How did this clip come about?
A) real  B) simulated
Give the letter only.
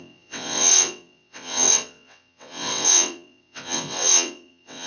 B